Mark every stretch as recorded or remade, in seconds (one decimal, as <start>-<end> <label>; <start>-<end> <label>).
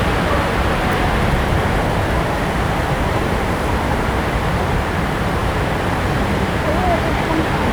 0.0-0.6 remade; 0.6-2.6 recorded; 2.6-7.7 remade